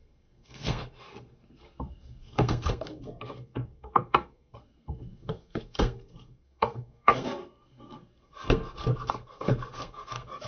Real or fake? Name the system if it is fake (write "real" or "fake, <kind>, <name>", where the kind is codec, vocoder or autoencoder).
fake, codec, SNAC